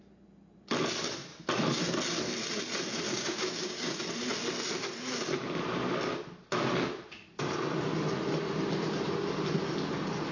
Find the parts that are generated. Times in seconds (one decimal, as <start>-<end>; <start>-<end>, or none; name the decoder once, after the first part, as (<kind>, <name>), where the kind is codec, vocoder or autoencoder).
3.1-4.0 (codec, DAC)